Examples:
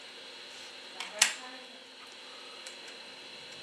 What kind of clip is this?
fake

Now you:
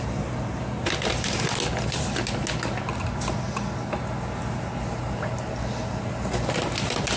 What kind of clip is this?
real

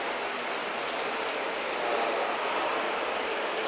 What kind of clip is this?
real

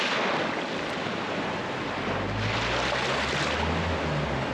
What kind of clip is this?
real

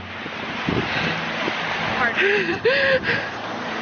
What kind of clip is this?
real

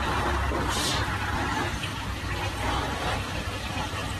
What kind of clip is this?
real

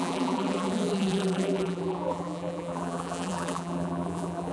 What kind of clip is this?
fake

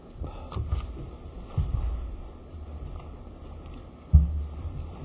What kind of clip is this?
fake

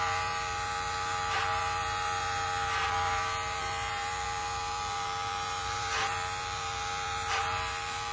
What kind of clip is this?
fake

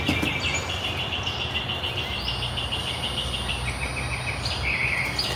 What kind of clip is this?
real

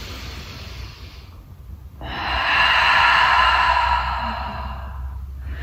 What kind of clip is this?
real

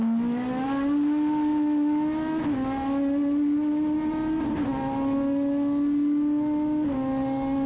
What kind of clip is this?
real